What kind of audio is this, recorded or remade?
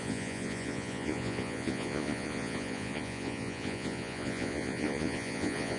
remade